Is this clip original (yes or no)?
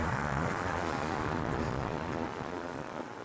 no